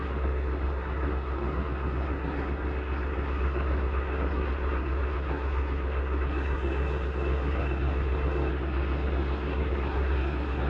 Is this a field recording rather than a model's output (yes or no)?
no